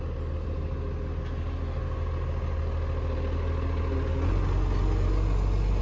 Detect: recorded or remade recorded